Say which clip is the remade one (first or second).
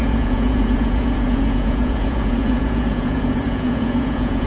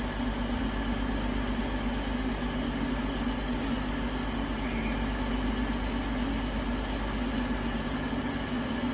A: first